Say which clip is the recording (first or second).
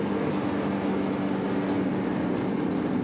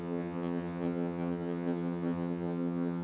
first